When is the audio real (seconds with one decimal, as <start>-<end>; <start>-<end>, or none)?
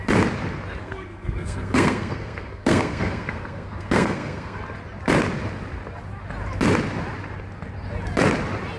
0.0-0.8; 4.6-8.8